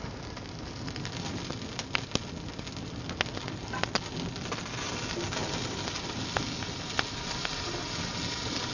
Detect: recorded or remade recorded